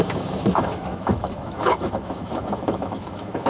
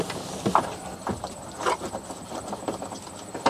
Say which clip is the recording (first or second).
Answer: second